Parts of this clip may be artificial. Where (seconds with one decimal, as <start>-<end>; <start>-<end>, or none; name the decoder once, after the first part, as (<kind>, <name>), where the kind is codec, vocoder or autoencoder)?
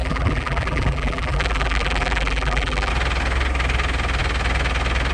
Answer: 0.0-2.9 (vocoder, BigVGAN v2)